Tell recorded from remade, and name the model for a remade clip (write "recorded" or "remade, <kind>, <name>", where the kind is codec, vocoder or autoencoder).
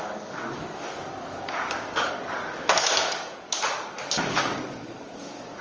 remade, codec, DAC